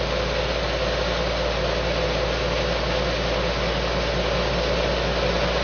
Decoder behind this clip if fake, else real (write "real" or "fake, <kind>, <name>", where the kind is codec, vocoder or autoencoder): real